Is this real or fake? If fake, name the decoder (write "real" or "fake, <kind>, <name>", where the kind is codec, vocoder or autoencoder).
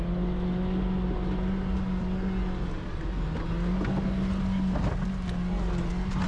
real